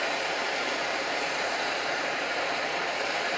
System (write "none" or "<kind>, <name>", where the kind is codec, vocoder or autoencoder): vocoder, BigVGAN v2